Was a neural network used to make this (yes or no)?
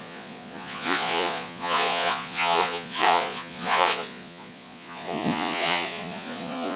yes